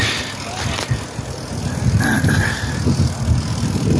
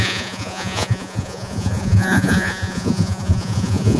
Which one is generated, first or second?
second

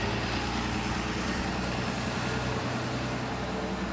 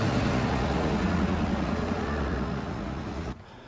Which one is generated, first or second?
second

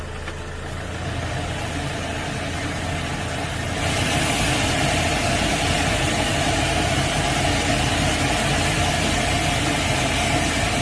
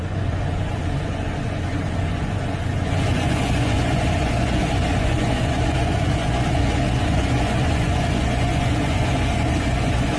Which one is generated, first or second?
second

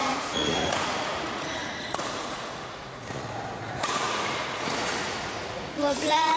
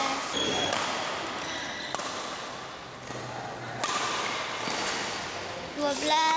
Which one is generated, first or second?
first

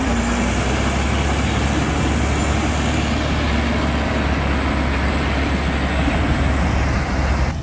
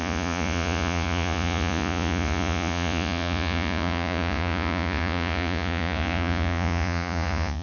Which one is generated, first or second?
second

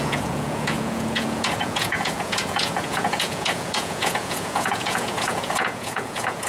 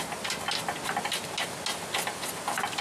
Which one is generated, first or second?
first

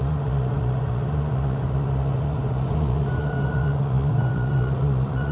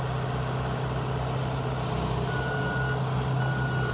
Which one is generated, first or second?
first